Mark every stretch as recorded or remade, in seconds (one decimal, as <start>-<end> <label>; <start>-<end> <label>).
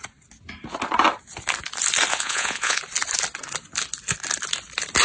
0.0-2.1 recorded; 2.1-2.8 remade; 2.8-5.0 recorded